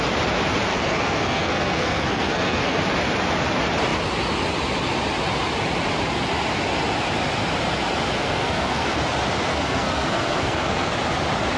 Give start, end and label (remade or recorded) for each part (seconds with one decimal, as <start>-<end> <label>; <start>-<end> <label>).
0.0-0.7 recorded; 0.7-2.8 remade; 2.8-8.2 recorded; 8.2-9.0 remade; 9.0-9.5 recorded; 9.5-10.9 remade; 10.9-11.6 recorded